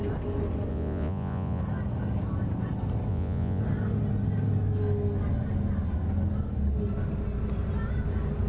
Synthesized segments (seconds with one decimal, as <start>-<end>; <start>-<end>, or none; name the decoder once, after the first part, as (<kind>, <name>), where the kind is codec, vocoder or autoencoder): 0.7-1.6 (vocoder, Vocos); 3.1-3.6